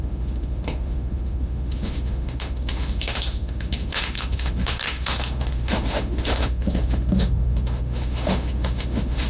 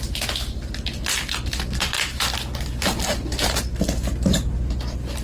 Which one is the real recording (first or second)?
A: second